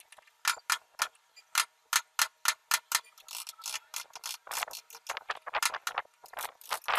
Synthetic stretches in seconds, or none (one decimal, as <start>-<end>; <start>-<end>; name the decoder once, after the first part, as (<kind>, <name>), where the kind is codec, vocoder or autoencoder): none